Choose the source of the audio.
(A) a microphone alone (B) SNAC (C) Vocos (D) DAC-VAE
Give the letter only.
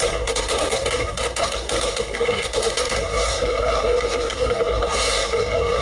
B